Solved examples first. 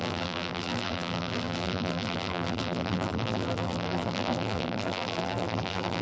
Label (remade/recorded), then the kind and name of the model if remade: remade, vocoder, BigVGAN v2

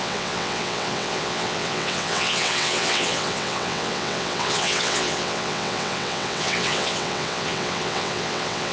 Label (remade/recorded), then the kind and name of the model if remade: remade, vocoder, WaveNeXt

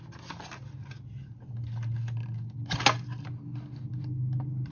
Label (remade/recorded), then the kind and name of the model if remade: recorded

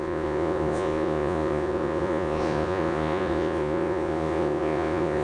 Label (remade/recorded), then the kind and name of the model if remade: remade, vocoder, Vocos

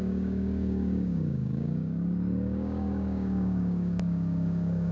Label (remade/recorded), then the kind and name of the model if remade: remade, codec, DAC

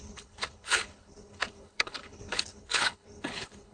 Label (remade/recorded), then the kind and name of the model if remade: remade, codec, HILCodec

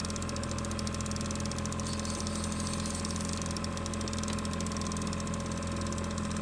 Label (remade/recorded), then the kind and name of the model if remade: recorded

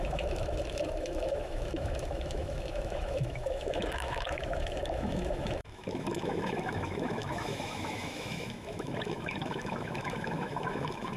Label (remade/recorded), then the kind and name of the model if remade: remade, autoencoder, DAC-VAE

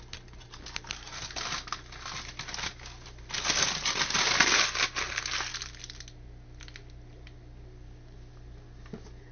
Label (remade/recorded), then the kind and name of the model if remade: recorded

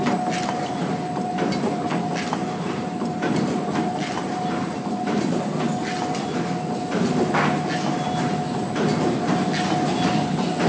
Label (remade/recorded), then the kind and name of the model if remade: recorded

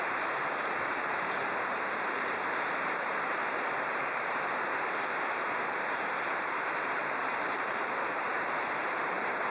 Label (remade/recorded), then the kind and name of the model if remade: remade, vocoder, BigVGAN v2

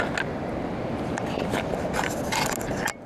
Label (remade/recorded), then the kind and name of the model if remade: recorded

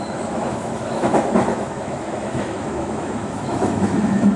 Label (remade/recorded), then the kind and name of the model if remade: remade, autoencoder, DAC-VAE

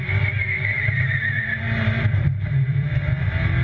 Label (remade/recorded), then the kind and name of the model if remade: remade, vocoder, BigVGAN v2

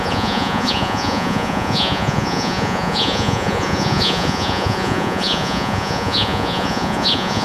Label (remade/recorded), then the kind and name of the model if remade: remade, vocoder, Vocos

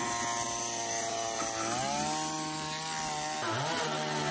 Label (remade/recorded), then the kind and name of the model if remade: recorded